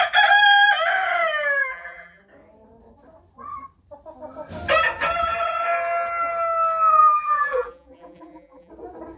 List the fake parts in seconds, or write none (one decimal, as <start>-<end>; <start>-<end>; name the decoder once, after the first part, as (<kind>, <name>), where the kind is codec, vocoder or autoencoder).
1.6-2.2 (vocoder, BigVGAN v2); 7.0-8.7